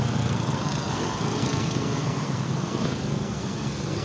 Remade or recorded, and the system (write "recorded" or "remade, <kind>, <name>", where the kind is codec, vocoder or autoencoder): remade, codec, SNAC